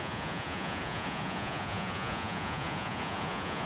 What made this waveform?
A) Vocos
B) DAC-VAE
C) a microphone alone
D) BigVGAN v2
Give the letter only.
A